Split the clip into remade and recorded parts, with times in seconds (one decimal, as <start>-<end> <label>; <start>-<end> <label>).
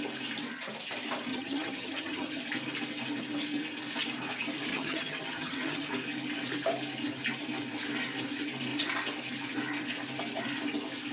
0.0-1.3 recorded; 1.3-2.4 remade; 2.4-4.7 recorded; 4.7-5.9 remade; 5.9-11.1 recorded